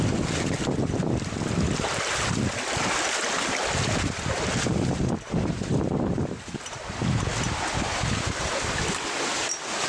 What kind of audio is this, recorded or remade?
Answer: recorded